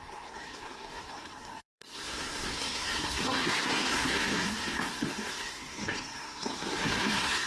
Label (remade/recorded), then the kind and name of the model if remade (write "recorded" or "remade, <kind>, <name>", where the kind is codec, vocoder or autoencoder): remade, codec, SNAC